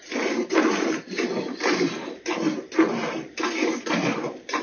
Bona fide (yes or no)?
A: no